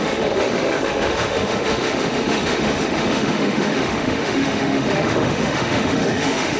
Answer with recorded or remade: remade